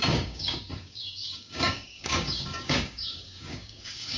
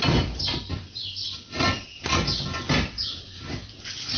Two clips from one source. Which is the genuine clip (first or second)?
second